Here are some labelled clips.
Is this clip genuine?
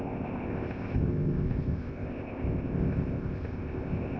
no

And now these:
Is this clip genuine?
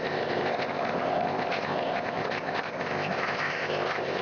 no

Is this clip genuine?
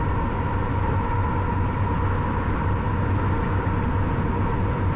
yes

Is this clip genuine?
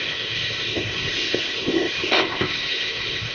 no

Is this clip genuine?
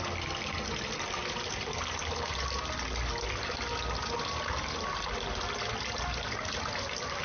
yes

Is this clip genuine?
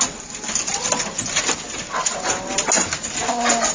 yes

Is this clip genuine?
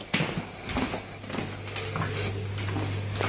yes